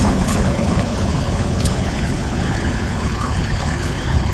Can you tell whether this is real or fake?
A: fake